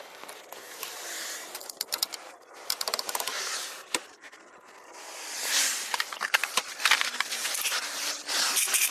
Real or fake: fake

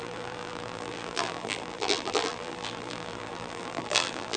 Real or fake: fake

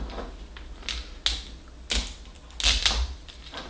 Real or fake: real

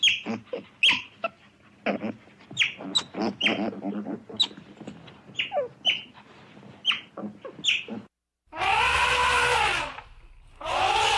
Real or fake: real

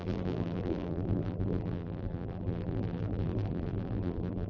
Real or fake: fake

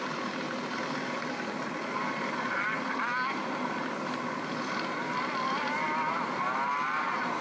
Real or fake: real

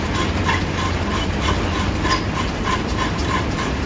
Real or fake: real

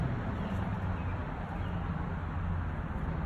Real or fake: real